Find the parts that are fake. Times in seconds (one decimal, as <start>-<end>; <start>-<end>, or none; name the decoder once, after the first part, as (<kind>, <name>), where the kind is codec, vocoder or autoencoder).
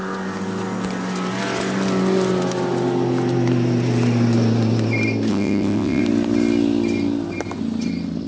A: 5.3-6.0 (vocoder, WaveNeXt)